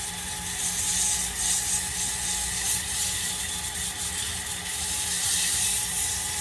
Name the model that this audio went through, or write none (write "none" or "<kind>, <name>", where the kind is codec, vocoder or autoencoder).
none